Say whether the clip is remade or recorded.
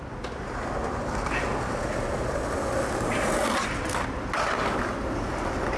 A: recorded